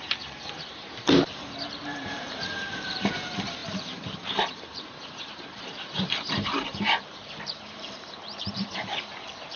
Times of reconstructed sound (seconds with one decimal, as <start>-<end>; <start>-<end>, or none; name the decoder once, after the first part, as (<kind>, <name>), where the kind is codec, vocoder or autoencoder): 0.0-9.6 (vocoder, BigVGAN v2)